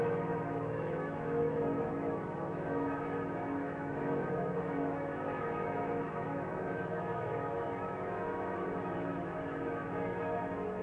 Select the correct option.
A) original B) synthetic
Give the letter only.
B